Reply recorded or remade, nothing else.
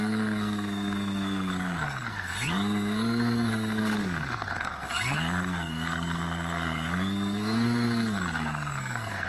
remade